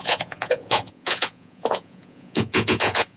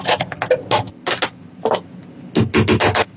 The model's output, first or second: first